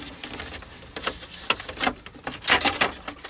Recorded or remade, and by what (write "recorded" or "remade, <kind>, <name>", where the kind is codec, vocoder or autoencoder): recorded